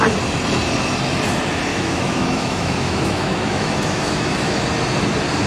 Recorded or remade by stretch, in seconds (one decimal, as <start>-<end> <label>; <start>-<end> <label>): 0.0-1.7 recorded; 1.7-4.6 remade; 4.6-5.5 recorded